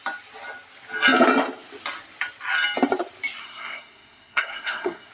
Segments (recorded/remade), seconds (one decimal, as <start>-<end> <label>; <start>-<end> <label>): 0.0-3.4 recorded; 3.4-5.1 remade

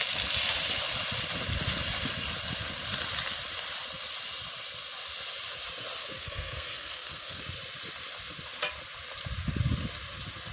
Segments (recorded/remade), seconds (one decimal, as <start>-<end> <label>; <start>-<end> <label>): 0.0-6.0 recorded; 6.0-7.4 remade; 7.4-10.5 recorded